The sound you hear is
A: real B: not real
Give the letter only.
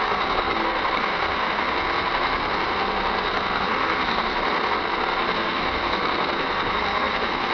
B